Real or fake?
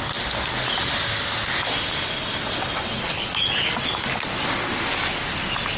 real